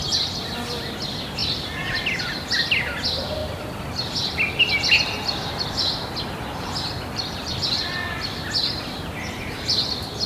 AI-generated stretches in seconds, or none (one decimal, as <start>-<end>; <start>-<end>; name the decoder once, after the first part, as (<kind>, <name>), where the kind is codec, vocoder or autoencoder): none